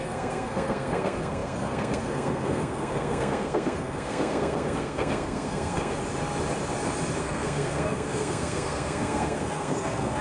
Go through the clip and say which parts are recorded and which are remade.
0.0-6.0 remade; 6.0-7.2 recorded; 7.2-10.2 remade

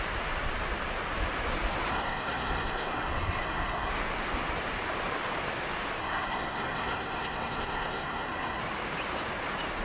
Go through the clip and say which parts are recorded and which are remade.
0.0-1.9 recorded; 1.9-3.9 remade; 3.9-6.0 recorded; 6.0-8.6 remade; 8.6-9.8 recorded